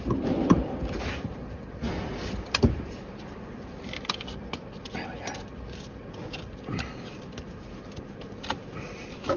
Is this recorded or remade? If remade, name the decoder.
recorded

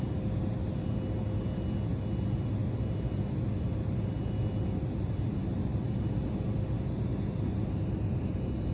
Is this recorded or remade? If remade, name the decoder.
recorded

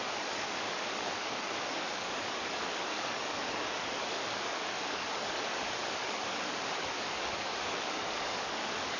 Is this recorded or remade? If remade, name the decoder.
remade, codec, DAC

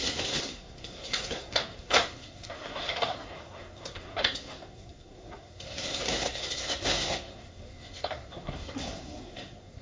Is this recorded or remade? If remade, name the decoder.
remade, codec, SNAC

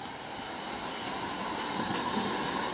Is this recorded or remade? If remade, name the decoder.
remade, vocoder, BigVGAN v2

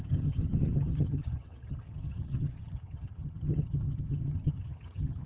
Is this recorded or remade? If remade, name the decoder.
remade, vocoder, HiFi-GAN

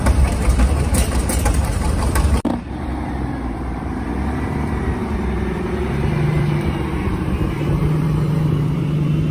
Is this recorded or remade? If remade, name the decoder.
remade, vocoder, BigVGAN v2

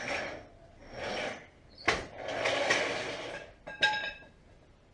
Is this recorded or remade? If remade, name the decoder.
recorded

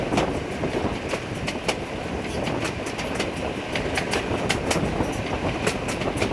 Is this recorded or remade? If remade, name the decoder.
recorded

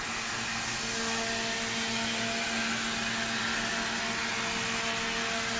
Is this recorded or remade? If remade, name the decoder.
recorded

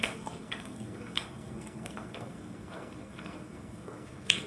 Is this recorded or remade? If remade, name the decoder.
remade, codec, SNAC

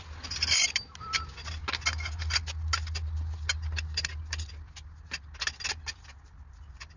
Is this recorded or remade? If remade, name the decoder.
recorded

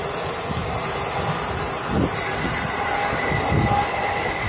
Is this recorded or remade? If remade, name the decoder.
recorded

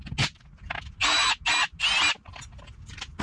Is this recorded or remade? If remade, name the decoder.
recorded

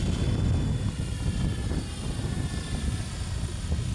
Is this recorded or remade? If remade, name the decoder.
recorded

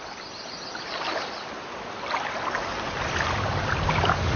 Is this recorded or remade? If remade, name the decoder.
recorded